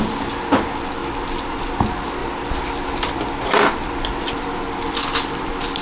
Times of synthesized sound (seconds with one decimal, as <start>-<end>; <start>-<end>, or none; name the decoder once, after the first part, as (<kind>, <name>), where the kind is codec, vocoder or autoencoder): 1.0-1.7 (vocoder, BigVGAN v2); 2.2-5.8